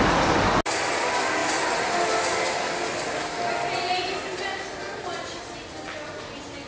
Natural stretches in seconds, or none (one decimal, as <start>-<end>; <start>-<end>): 0.0-6.7